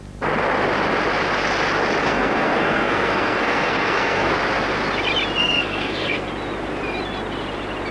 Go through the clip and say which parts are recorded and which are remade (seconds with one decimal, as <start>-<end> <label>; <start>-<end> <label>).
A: 0.0-2.0 recorded; 2.0-4.3 remade; 4.3-5.4 recorded; 5.4-6.3 remade; 6.3-7.9 recorded

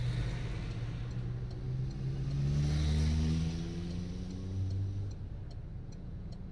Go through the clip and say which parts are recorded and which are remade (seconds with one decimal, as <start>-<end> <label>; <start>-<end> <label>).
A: 0.0-5.7 recorded; 5.7-6.5 remade

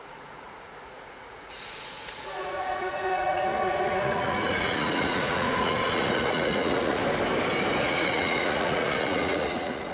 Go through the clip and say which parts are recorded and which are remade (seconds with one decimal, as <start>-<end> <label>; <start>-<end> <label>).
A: 0.0-7.0 remade; 7.0-7.8 recorded; 7.8-9.9 remade

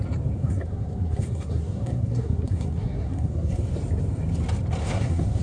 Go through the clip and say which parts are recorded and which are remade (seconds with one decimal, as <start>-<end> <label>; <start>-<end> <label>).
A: 0.0-0.4 recorded; 0.4-3.6 remade; 3.6-4.8 recorded; 4.8-5.4 remade

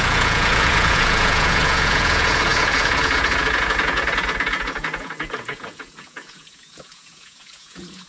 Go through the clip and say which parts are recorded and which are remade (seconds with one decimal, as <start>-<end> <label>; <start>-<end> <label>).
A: 0.0-8.1 remade

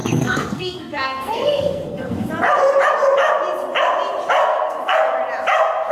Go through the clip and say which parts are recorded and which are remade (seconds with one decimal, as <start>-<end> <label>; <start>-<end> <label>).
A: 0.0-2.3 remade; 2.3-4.4 recorded; 4.4-5.0 remade; 5.0-5.9 recorded

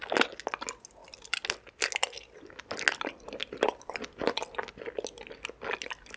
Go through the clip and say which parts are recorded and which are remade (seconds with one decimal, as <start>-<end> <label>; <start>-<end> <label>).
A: 0.0-6.2 recorded